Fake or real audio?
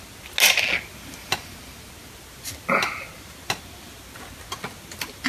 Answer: real